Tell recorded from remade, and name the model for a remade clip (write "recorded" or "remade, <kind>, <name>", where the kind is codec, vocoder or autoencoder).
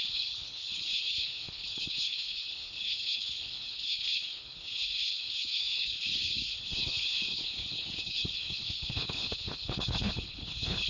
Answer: remade, codec, HILCodec